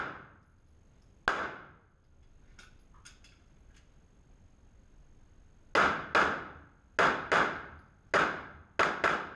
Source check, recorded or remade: recorded